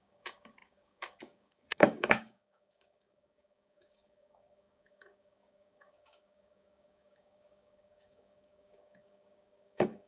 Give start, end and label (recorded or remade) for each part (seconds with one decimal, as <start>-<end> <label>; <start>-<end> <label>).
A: 0.0-10.1 remade